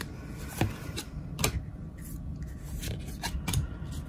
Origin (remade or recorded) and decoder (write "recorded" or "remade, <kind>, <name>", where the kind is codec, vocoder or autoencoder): recorded